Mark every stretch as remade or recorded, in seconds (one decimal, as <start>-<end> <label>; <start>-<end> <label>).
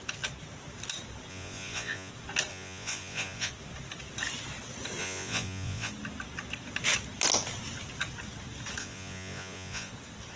0.0-1.3 recorded; 1.3-2.1 remade; 2.1-2.5 recorded; 2.5-3.5 remade; 3.5-5.0 recorded; 5.0-5.9 remade; 5.9-8.8 recorded; 8.8-9.9 remade; 9.9-10.4 recorded